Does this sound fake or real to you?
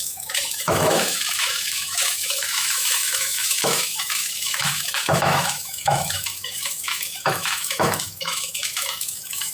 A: fake